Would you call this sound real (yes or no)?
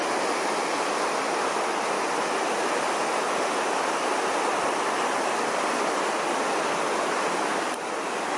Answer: yes